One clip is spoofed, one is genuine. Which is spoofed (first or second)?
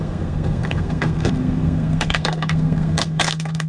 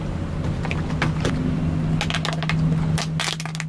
first